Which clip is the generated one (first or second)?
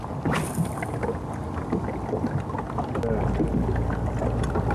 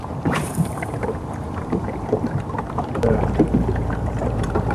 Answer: second